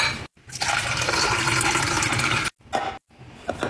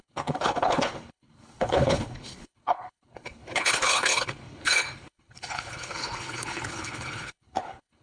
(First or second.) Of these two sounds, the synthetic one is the second